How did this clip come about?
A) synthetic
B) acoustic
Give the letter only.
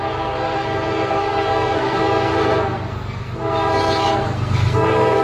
A